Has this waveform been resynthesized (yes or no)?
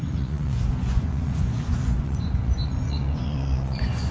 yes